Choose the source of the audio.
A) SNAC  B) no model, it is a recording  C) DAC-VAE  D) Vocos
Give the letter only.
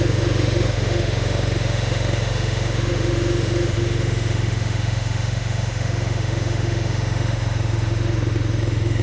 C